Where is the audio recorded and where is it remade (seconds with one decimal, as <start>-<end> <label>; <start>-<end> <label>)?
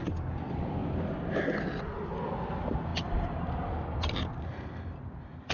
0.0-5.5 recorded